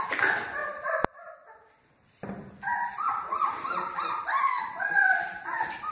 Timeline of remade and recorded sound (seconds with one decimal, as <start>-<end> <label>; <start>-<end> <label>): 0.0-5.9 recorded